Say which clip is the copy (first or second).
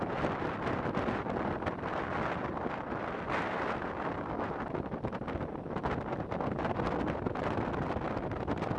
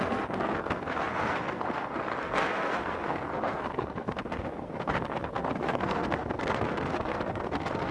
second